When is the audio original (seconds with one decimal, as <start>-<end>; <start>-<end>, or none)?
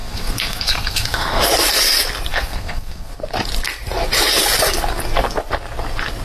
1.4-2.3; 3.1-6.2